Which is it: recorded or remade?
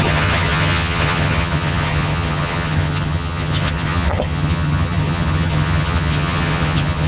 remade